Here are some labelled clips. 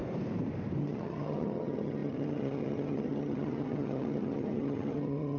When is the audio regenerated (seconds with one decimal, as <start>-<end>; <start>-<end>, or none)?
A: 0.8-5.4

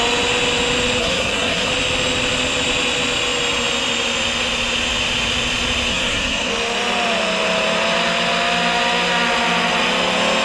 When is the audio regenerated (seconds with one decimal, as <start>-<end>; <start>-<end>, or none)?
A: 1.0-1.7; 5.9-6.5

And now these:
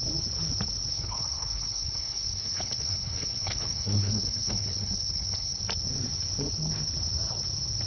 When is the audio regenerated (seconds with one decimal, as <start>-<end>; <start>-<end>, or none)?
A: 0.9-5.6

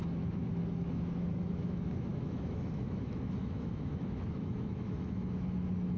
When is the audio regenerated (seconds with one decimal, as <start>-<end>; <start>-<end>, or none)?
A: 0.0-6.0

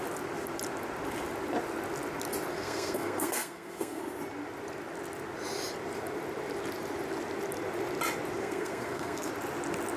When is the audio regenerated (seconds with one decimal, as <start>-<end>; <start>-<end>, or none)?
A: 2.5-4.0; 8.4-9.3